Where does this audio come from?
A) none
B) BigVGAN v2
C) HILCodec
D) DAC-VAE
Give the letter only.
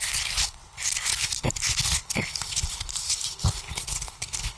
C